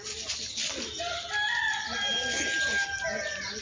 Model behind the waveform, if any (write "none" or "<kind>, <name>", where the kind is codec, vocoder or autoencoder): none